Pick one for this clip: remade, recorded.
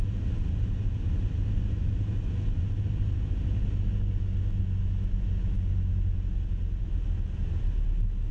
recorded